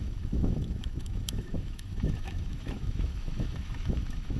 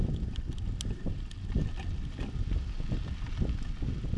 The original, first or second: second